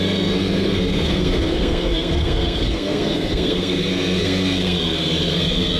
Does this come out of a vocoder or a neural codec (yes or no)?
yes